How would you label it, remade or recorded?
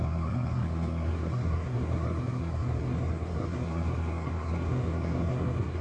remade